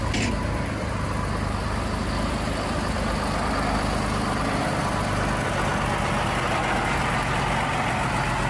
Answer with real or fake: real